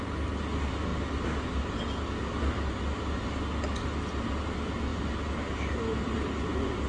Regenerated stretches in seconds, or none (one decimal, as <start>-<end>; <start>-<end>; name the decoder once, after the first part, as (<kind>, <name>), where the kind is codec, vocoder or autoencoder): none